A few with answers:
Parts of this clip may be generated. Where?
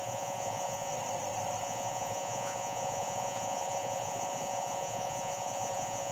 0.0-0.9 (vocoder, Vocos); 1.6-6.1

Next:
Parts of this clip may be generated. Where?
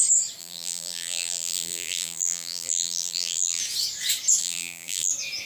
0.4-3.6 (vocoder, BigVGAN v2); 4.4-5.1